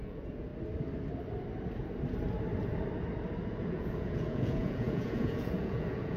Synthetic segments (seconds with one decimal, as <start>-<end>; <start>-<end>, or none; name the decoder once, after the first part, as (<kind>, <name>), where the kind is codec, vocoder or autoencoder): 0.0-0.5 (vocoder, Vocos); 3.6-6.2